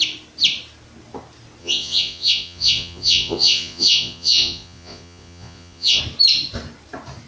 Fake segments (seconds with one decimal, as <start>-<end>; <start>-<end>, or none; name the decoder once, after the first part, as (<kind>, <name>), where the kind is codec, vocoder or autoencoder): 1.6-6.0 (vocoder, Vocos)